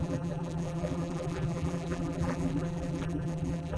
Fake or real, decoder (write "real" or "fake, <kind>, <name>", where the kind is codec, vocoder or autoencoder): fake, vocoder, BigVGAN v2